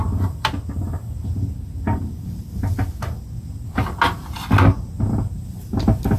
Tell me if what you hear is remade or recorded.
recorded